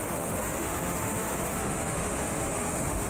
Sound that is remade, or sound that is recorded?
remade